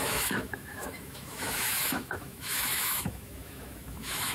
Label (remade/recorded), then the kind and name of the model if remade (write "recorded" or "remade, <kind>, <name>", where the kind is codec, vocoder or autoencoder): remade, autoencoder, DAC-VAE